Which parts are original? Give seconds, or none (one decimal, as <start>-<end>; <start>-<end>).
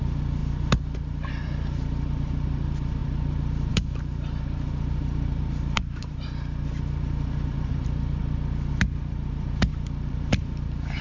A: 8.2-8.7